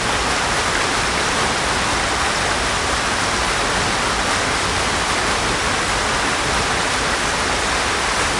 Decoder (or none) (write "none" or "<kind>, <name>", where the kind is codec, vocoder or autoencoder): none